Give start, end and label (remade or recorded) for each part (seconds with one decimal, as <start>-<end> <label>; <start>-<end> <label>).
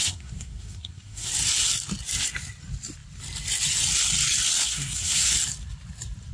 0.0-1.3 remade; 1.3-4.6 recorded; 4.6-5.3 remade; 5.3-6.3 recorded